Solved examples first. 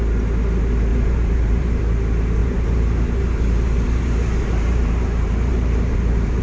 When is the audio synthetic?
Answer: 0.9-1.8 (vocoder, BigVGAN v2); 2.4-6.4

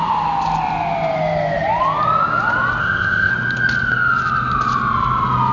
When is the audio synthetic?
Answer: 2.8-3.3 (codec, ZipCodec)

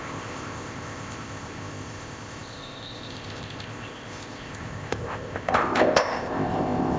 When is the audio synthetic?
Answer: 0.0-7.0 (codec, ZipCodec)

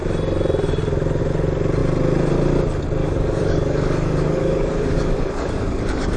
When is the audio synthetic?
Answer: 3.0-6.2 (codec, DAC)

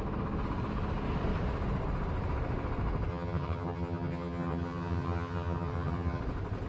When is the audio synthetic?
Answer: 3.1-6.2 (vocoder, HiFi-GAN)

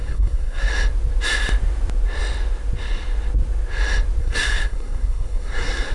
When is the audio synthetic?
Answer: 0.0-0.7 (codec, SNAC); 4.2-5.9